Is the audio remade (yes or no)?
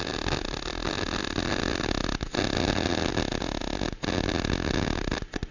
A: no